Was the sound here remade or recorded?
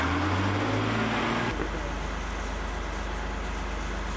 recorded